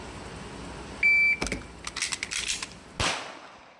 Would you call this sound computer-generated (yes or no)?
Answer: no